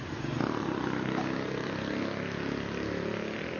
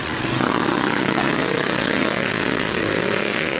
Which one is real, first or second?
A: first